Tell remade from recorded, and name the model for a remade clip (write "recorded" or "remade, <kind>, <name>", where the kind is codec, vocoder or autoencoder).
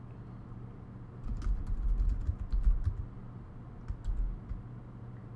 recorded